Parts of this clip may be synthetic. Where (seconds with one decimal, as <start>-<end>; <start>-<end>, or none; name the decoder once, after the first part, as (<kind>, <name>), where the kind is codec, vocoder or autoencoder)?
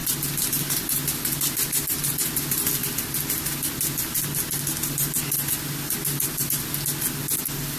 none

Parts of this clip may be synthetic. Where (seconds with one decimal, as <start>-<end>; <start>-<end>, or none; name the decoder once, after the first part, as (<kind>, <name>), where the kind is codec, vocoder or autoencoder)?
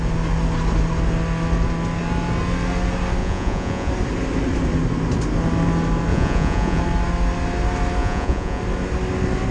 3.2-3.9 (vocoder, Vocos); 6.1-6.8; 8.0-8.6